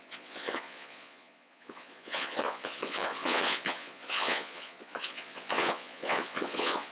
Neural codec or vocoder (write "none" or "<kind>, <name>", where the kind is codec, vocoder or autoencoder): vocoder, Vocos